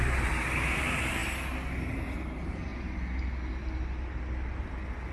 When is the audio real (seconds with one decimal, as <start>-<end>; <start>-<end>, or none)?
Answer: 1.2-1.9; 2.7-5.1